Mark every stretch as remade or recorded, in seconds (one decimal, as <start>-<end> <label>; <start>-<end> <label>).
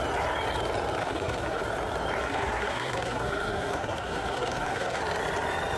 0.0-1.0 recorded; 1.0-1.6 remade; 1.6-2.2 recorded; 2.2-5.0 remade; 5.0-5.8 recorded